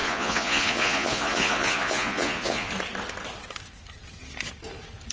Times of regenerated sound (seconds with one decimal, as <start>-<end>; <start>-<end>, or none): 0.0-2.7